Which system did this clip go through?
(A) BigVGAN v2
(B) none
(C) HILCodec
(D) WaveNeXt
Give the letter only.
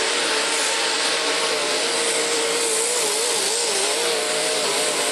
B